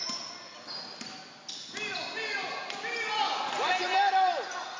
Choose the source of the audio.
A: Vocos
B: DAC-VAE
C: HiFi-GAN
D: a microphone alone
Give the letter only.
D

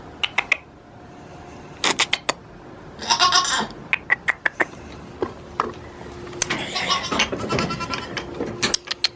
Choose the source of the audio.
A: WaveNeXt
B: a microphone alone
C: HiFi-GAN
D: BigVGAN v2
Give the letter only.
B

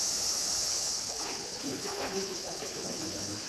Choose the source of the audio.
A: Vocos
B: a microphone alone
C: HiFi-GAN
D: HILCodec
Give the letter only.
D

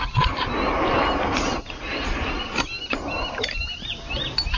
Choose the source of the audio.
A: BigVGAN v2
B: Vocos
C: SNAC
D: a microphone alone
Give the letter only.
D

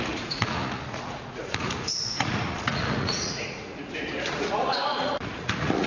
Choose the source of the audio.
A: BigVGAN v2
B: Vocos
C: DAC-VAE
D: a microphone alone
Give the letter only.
B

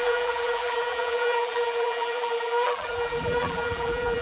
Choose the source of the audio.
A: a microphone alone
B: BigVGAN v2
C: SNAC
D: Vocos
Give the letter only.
B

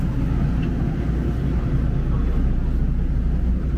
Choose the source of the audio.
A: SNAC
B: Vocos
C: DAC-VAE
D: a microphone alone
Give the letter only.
D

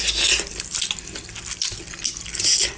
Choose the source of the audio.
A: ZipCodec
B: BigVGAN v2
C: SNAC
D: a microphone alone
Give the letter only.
D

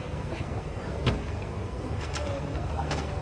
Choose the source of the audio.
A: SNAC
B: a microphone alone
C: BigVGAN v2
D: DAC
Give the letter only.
A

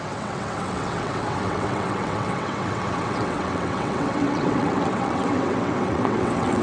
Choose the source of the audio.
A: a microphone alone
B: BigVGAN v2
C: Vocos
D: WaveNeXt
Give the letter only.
D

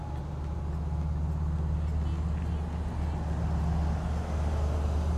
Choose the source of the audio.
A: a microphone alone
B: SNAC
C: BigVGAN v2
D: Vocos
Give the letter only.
A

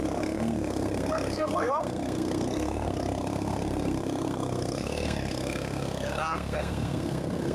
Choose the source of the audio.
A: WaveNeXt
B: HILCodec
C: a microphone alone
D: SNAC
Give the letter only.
D